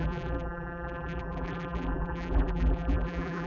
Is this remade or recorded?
remade